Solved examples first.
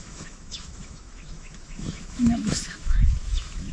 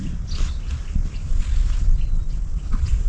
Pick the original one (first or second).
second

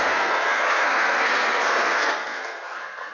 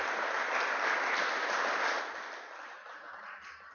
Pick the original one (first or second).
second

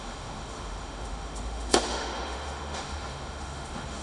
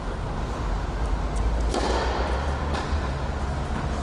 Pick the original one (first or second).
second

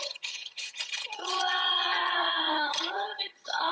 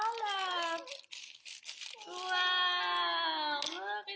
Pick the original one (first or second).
second